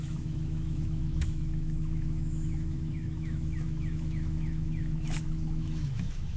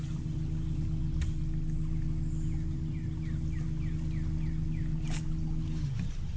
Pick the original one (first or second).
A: second